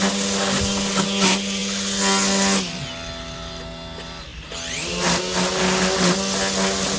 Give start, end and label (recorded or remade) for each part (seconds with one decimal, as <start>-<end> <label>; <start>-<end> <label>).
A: 0.0-7.0 recorded